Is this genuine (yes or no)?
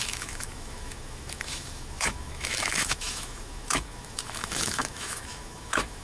no